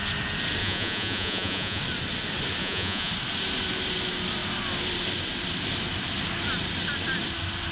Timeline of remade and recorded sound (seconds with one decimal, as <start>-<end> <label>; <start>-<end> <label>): 0.0-0.6 recorded; 0.6-1.8 remade; 1.8-2.6 recorded; 2.6-3.1 remade; 3.1-7.7 recorded